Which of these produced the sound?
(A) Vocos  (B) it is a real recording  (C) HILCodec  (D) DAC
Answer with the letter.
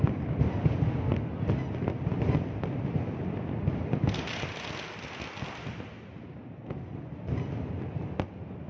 B